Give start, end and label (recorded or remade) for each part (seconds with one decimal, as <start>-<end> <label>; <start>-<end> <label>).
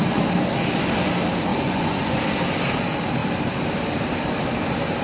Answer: 0.0-1.5 recorded; 1.5-2.2 remade; 2.2-5.0 recorded